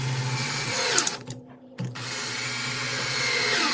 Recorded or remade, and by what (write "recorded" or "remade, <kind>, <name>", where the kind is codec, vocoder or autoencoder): recorded